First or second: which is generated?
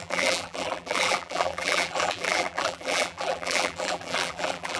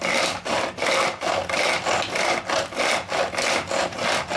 first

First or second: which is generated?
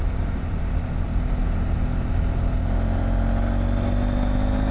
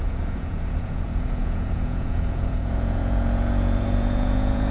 second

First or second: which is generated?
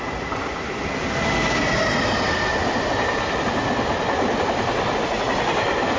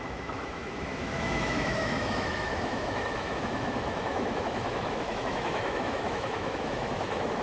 second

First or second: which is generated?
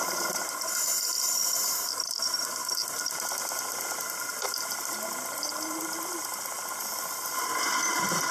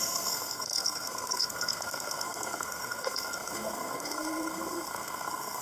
second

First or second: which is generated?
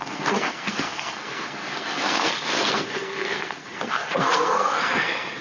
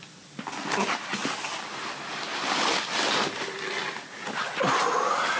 first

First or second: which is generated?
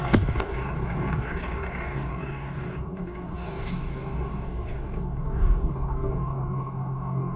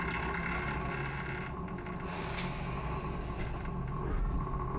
first